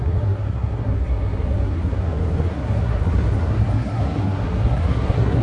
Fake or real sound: fake